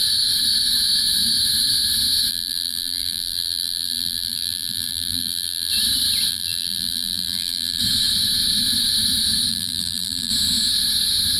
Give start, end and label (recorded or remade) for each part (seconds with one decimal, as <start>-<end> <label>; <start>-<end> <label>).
0.0-2.3 recorded; 2.3-5.7 remade; 5.7-6.3 recorded; 6.3-7.8 remade; 7.8-9.5 recorded; 9.5-10.3 remade; 10.3-11.4 recorded

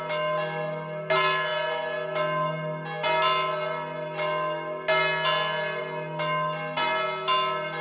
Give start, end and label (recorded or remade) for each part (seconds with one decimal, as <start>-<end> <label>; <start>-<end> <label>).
0.0-7.8 recorded

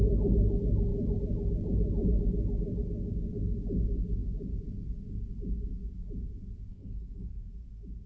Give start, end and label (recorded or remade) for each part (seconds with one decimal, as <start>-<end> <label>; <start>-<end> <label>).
0.0-6.7 recorded; 6.7-7.5 remade; 7.5-8.1 recorded

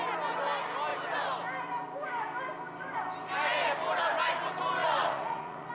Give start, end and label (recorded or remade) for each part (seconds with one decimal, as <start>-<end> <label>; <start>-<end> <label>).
0.0-4.8 recorded; 4.8-5.7 remade

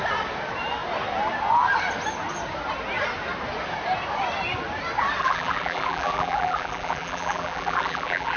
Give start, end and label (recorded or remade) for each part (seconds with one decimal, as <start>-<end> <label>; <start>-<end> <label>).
0.0-5.2 recorded; 5.2-8.4 remade

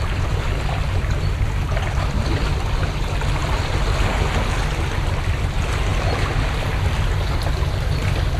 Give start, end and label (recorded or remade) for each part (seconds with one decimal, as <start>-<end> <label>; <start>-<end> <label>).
0.0-8.4 recorded

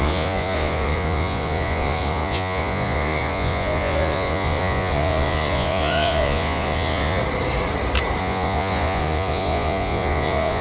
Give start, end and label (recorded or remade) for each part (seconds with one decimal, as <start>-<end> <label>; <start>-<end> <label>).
0.0-7.2 remade; 7.2-8.2 recorded; 8.2-10.6 remade

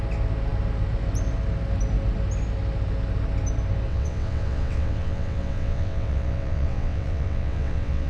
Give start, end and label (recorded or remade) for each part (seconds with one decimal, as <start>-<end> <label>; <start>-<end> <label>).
0.0-3.9 recorded; 3.9-8.1 remade